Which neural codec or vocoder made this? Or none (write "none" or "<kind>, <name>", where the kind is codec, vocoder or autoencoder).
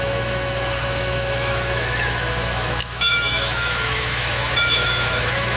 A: autoencoder, DAC-VAE